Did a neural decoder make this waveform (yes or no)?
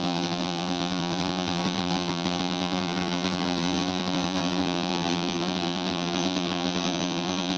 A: yes